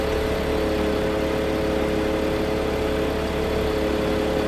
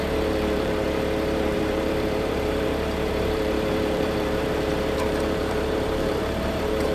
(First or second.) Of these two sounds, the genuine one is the first